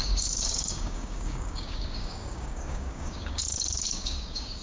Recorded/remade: remade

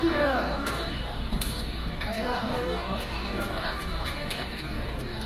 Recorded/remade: remade